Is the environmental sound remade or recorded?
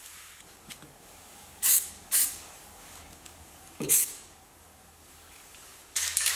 remade